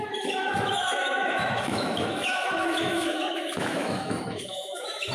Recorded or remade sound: remade